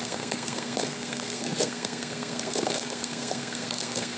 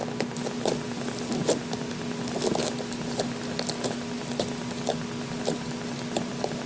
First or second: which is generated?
first